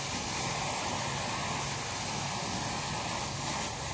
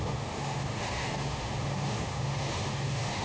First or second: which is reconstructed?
second